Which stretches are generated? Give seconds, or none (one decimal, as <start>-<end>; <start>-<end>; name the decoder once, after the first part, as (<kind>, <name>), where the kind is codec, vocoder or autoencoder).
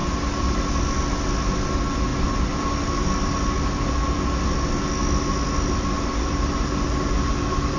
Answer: none